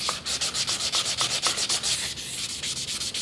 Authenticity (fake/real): real